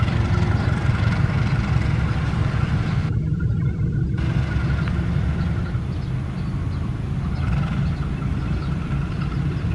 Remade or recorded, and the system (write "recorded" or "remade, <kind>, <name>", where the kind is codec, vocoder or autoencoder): recorded